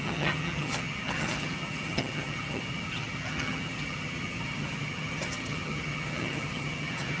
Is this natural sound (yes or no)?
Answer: no